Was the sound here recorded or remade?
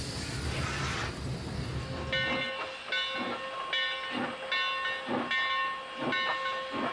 recorded